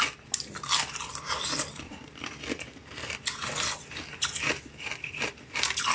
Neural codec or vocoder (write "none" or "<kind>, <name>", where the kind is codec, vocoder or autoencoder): none